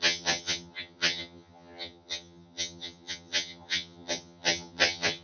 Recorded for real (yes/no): no